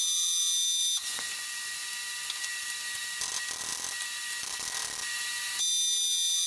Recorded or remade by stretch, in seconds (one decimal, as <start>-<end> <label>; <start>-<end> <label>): 0.0-6.5 recorded